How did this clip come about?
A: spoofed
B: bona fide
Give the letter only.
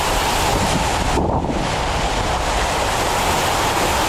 B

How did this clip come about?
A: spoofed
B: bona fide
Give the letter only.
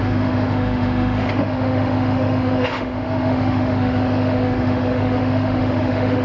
A